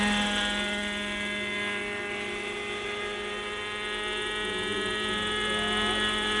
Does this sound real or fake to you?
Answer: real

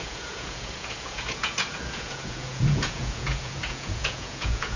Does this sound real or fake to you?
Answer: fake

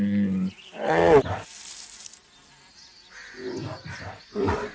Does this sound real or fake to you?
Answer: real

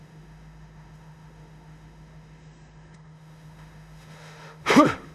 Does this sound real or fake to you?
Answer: fake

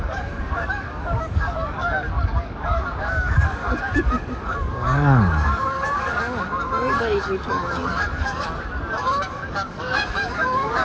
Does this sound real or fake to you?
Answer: fake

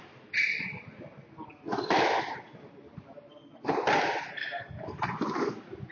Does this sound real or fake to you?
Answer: real